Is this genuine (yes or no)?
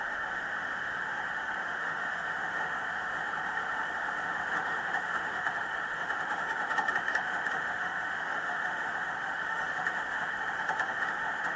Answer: no